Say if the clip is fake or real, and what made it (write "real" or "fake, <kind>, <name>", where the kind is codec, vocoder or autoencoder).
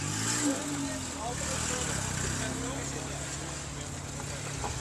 real